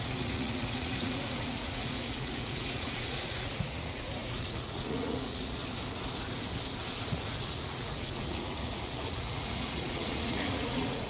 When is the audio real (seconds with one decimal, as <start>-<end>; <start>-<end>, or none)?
5.6-7.0